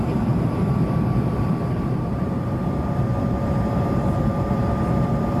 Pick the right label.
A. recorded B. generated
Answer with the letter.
B